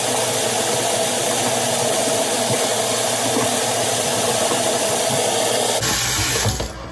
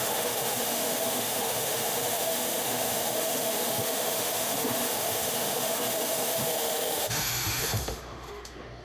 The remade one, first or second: second